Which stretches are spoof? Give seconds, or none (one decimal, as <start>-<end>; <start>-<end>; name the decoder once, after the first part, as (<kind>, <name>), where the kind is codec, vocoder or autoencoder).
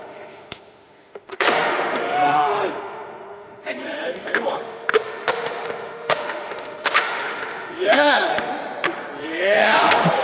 0.0-8.5 (autoencoder, DAC-VAE); 9.2-10.2